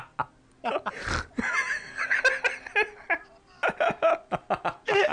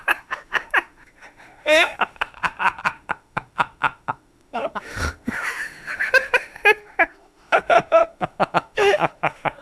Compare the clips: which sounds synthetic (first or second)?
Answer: second